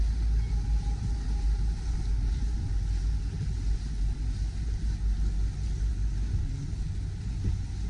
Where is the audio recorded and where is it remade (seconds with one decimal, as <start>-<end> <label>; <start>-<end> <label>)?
0.0-7.9 recorded

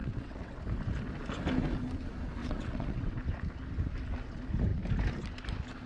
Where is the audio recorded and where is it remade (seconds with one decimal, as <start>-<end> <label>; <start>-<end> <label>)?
0.0-0.6 remade; 0.6-2.4 recorded; 2.4-3.2 remade; 3.2-5.9 recorded

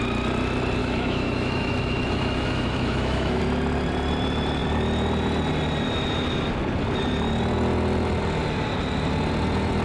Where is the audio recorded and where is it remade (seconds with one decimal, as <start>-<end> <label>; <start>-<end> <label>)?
0.0-0.8 recorded; 0.8-3.4 remade; 3.4-9.8 recorded